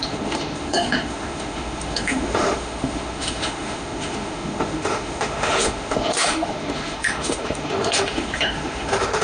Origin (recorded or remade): remade